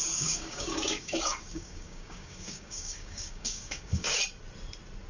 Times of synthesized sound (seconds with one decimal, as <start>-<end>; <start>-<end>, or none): 0.0-4.2